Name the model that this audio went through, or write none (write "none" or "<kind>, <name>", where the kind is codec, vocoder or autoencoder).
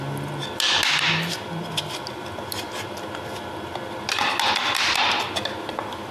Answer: none